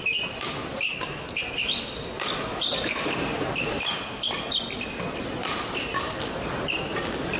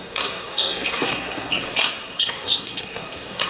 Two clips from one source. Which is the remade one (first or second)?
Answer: second